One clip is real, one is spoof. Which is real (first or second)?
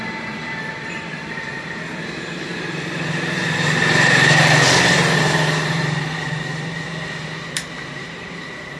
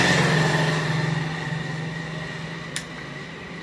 second